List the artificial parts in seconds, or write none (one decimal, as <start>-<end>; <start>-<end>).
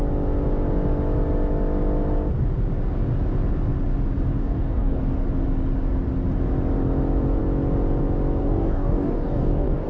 4.3-5.0; 8.4-9.9